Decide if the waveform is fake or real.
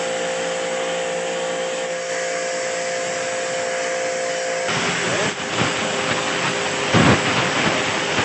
real